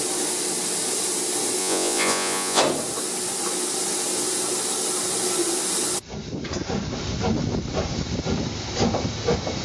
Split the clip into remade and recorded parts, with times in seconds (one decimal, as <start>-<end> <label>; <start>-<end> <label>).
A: 0.0-1.6 recorded; 1.6-2.6 remade; 2.6-9.6 recorded